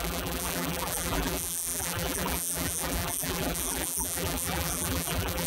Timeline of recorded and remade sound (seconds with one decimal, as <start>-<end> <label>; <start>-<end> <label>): 0.0-5.5 remade